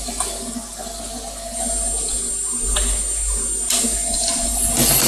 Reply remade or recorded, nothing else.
recorded